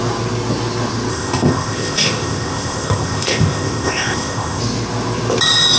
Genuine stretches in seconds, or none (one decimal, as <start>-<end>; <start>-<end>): 0.0-1.1; 4.6-5.8